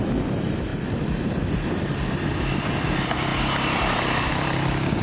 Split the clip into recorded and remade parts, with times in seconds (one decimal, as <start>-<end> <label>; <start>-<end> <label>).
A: 0.0-0.7 remade; 0.7-2.1 recorded; 2.1-3.3 remade; 3.3-4.3 recorded; 4.3-5.0 remade